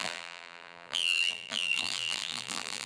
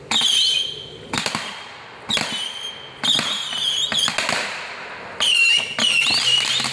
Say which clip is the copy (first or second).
first